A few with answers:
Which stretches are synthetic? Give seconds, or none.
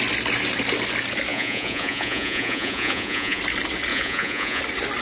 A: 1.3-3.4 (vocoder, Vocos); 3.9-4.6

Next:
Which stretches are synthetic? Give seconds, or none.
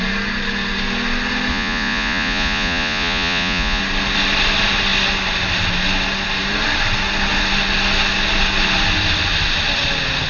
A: 1.5-3.8 (vocoder, Vocos)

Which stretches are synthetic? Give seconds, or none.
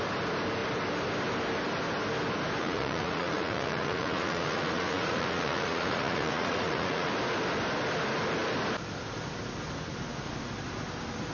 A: 2.6-7.1 (vocoder, Vocos)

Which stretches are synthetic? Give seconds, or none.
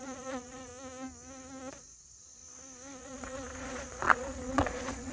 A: 0.0-0.7 (vocoder, Vocos); 1.7-2.4; 3.0-5.1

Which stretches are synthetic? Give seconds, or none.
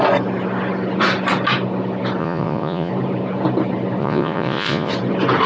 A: 2.2-2.9 (vocoder, Vocos); 4.0-4.9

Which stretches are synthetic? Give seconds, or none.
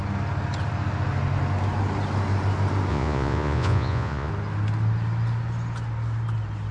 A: 2.9-4.3 (vocoder, Vocos)